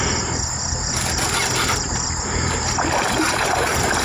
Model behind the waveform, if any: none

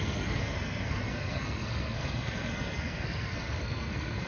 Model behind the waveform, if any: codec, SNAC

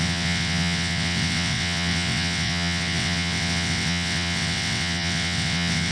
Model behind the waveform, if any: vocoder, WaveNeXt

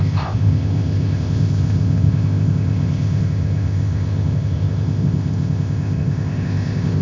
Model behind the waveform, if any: codec, ZipCodec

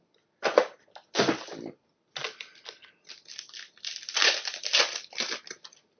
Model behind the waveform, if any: none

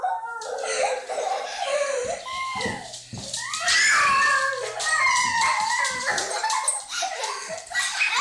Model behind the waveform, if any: none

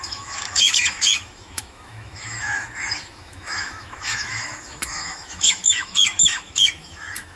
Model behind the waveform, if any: autoencoder, DAC-VAE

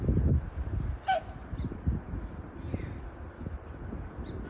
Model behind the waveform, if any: none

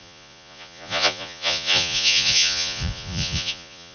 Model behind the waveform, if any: vocoder, Vocos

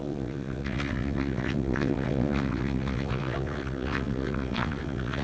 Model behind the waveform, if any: vocoder, WaveNeXt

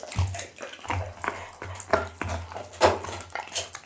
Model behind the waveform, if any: none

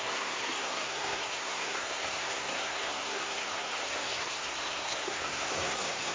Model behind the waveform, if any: codec, SNAC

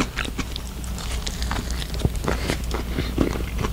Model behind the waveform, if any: none